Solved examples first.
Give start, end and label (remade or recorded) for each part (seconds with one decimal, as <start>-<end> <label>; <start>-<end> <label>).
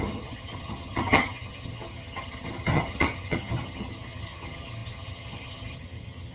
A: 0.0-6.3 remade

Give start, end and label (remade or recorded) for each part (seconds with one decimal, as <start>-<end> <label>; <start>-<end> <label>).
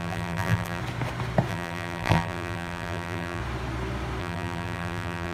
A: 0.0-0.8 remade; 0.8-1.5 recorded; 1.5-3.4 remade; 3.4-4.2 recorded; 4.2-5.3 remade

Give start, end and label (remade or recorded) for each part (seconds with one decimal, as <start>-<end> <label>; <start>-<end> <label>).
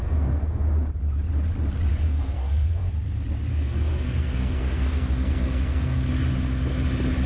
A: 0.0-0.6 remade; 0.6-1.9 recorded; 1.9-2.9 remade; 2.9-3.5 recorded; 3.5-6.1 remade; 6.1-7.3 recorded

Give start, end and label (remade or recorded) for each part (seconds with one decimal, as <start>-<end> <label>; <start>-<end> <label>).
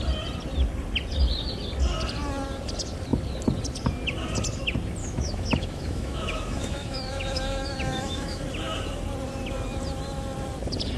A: 0.0-5.0 recorded; 5.0-8.4 remade; 8.4-11.0 recorded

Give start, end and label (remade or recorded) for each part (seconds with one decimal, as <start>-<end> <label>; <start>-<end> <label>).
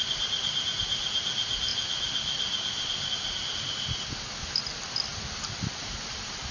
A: 0.0-6.5 recorded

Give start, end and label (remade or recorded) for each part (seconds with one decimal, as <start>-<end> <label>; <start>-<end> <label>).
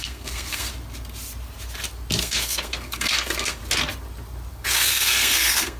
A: 0.0-0.7 remade; 0.7-2.2 recorded; 2.2-3.6 remade; 3.6-4.5 recorded; 4.5-5.8 remade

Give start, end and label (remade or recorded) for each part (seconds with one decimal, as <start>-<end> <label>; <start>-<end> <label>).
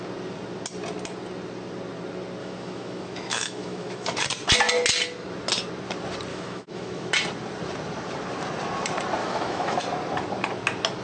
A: 0.0-2.4 recorded; 2.4-4.2 remade; 4.2-6.3 recorded; 6.3-7.1 remade; 7.1-9.2 recorded; 9.2-9.8 remade; 9.8-11.0 recorded